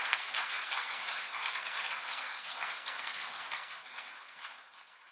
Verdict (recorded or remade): remade